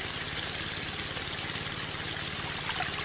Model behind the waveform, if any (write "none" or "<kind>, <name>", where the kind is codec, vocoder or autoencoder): none